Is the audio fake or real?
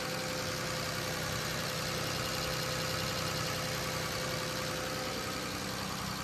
real